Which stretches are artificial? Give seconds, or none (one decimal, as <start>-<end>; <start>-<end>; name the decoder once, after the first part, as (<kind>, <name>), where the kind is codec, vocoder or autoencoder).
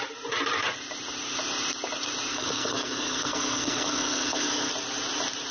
2.3-4.7 (codec, SNAC)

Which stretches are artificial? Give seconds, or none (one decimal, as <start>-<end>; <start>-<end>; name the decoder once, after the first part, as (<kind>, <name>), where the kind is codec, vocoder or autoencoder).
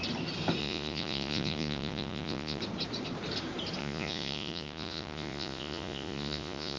0.6-2.6 (vocoder, Vocos); 3.8-6.8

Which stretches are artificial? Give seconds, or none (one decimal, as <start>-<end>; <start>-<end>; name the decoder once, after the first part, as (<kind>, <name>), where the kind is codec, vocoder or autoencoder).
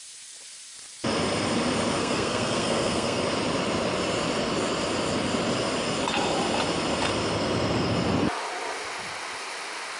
2.0-3.2 (codec, SNAC)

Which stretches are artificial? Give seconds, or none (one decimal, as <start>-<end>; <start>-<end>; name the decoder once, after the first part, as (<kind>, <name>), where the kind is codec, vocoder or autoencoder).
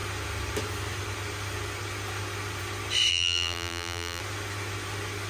3.1-4.2 (vocoder, BigVGAN v2)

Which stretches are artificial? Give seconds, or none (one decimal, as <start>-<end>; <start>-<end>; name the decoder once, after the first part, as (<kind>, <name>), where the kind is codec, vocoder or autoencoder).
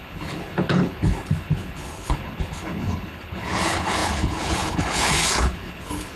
0.0-6.2 (codec, HILCodec)